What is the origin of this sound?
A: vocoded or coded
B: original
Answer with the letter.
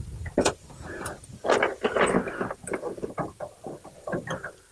A